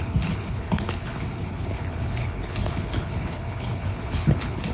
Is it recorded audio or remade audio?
remade